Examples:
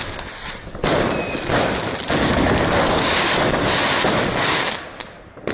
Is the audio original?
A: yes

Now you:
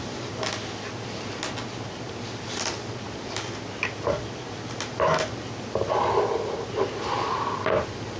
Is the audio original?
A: yes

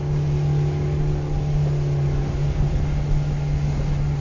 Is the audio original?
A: yes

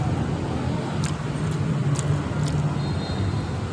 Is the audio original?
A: yes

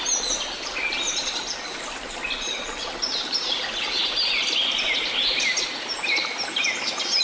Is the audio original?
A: yes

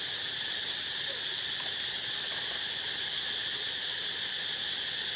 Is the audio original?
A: yes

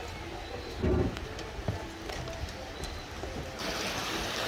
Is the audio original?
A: yes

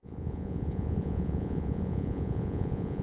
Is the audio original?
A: no